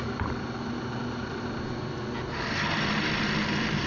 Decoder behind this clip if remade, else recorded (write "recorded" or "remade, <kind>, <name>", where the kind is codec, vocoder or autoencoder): recorded